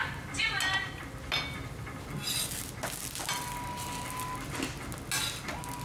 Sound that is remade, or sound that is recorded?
recorded